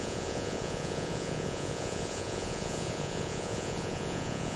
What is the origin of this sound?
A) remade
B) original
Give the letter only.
A